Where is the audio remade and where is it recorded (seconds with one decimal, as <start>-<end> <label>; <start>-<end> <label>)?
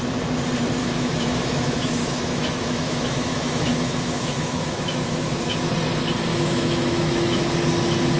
0.0-0.8 recorded; 0.8-5.7 remade; 5.7-6.3 recorded; 6.3-7.5 remade; 7.5-8.2 recorded